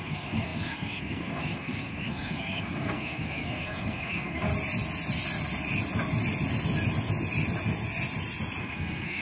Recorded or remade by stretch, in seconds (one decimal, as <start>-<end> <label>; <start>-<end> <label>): 0.0-4.5 remade; 4.5-8.6 recorded; 8.6-9.2 remade